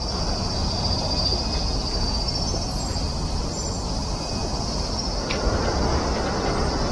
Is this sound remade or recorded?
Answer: recorded